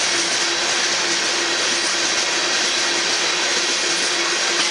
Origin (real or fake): real